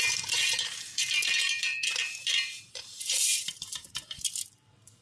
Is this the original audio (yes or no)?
no